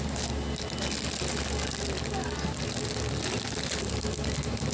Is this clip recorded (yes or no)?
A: yes